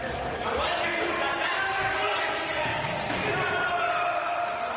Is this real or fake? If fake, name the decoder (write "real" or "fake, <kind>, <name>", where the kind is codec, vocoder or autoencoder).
real